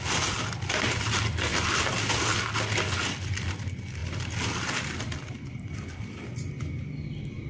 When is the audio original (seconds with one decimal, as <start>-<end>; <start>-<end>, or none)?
0.0-7.5